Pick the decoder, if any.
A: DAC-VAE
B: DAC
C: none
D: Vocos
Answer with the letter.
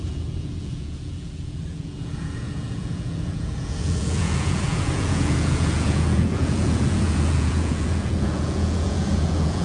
D